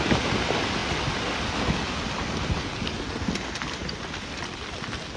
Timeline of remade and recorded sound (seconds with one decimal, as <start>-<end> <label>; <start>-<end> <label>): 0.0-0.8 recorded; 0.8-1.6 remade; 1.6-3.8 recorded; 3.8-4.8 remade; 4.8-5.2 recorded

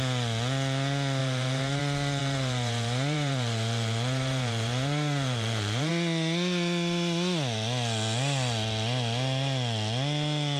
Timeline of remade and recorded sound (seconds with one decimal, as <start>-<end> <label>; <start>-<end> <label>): 0.0-1.2 recorded; 1.2-1.8 remade; 1.8-2.2 recorded; 2.2-5.9 remade; 5.9-10.6 recorded

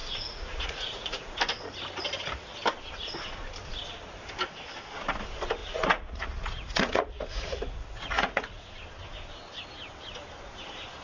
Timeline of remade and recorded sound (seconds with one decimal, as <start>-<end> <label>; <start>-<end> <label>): 0.0-1.4 remade; 1.4-5.6 recorded; 5.6-8.7 remade; 8.7-11.0 recorded